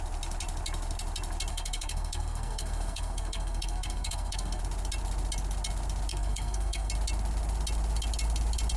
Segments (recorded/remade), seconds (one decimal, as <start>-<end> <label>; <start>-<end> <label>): 0.0-1.5 recorded; 1.5-4.6 remade; 4.6-6.1 recorded; 6.1-6.9 remade; 6.9-8.8 recorded